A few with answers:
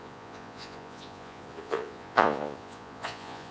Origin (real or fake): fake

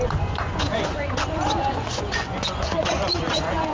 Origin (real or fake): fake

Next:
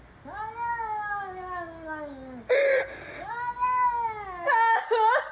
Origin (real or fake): real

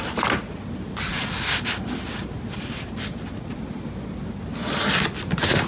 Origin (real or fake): real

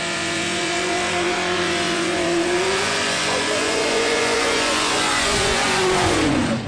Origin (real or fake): fake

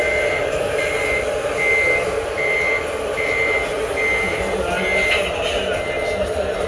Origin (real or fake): real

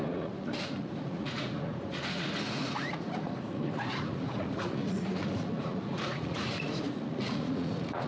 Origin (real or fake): fake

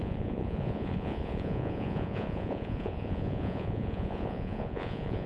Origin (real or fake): fake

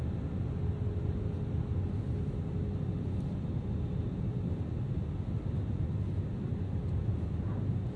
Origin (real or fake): real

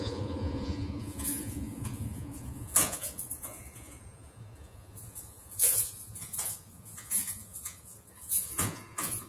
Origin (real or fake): fake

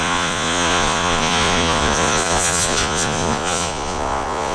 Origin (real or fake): fake